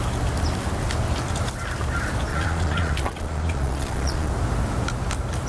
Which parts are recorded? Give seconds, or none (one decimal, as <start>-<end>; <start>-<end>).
0.0-2.3; 4.3-5.5